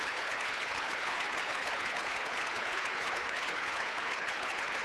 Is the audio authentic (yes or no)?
no